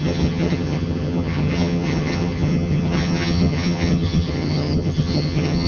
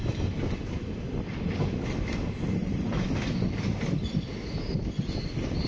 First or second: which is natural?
second